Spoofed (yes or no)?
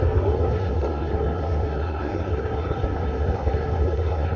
yes